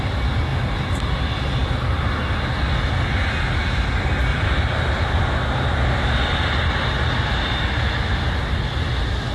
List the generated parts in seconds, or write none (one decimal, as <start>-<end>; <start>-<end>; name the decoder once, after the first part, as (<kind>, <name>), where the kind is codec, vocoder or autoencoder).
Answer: 4.3-6.6 (vocoder, BigVGAN v2)